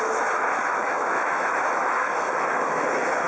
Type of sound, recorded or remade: remade